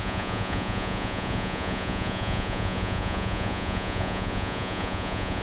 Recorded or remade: remade